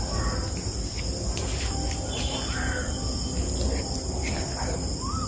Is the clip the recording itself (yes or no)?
yes